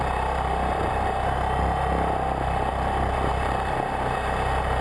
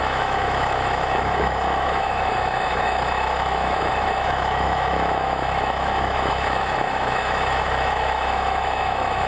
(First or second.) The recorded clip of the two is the first